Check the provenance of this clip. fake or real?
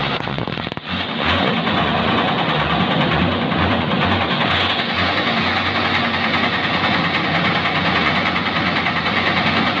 fake